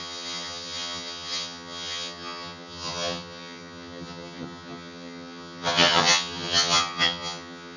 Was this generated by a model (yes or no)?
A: yes